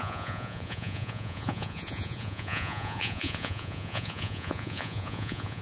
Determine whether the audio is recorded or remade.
remade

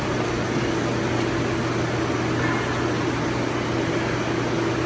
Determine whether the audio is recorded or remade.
recorded